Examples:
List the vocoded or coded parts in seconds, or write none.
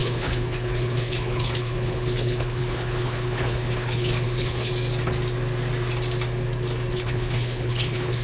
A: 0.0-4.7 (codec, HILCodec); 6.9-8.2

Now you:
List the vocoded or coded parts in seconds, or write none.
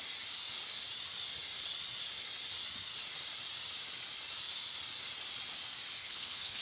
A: 6.0-6.6 (codec, HILCodec)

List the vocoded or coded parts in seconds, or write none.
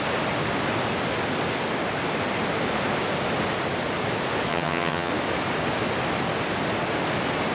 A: 4.5-5.1 (vocoder, HiFi-GAN)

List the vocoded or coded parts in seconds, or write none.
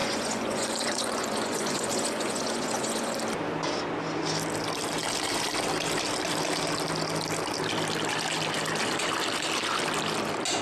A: 0.0-3.2 (vocoder, Vocos)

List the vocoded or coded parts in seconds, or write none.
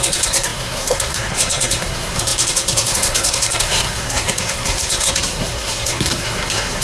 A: 0.0-6.8 (codec, SNAC)